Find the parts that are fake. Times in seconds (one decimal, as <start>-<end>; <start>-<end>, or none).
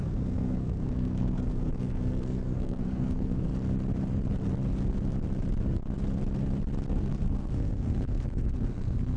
0.0-3.5; 6.9-9.2